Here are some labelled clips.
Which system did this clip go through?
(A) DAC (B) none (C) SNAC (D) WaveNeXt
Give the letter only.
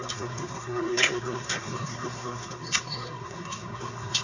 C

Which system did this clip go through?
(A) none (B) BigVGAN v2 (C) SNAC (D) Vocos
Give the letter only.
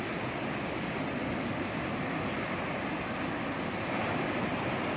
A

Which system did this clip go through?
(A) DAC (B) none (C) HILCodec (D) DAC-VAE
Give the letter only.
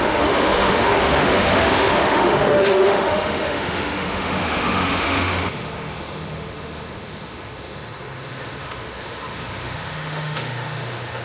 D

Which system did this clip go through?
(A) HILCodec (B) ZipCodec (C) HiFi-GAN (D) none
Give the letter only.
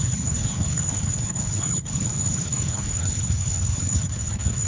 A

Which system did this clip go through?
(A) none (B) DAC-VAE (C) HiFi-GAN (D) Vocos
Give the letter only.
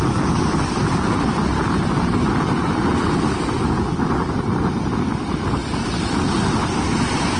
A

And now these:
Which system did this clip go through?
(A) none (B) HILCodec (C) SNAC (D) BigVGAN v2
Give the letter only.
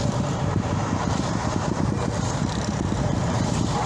D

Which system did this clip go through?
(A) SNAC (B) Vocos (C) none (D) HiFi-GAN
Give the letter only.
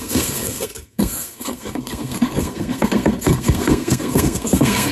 A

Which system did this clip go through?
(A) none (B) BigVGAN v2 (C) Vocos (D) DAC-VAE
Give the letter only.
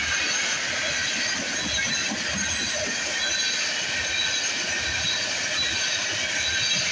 A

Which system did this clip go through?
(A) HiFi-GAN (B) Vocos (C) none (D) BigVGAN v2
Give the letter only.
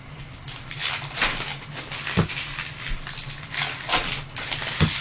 C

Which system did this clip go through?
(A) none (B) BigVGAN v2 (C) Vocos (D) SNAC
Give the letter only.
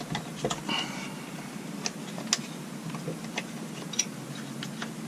A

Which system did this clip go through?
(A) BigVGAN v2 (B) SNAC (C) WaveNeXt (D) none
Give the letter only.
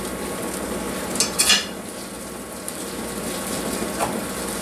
D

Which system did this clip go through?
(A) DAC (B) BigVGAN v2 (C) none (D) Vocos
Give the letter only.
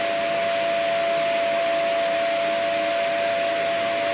C